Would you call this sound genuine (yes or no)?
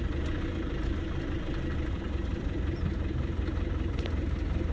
yes